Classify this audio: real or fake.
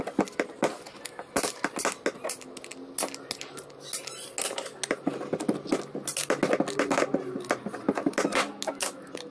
real